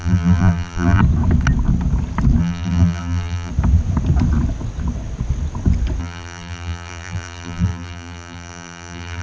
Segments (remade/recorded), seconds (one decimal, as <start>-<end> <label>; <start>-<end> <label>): 0.0-1.0 remade; 1.0-2.4 recorded; 2.4-3.5 remade; 3.5-6.0 recorded; 6.0-9.2 remade